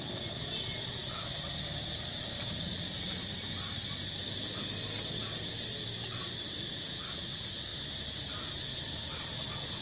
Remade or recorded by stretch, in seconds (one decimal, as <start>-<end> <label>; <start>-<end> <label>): 0.0-9.8 recorded